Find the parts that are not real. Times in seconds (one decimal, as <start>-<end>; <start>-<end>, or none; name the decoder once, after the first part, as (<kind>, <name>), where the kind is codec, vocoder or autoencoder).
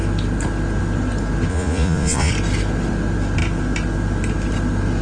1.5-2.3 (vocoder, Vocos)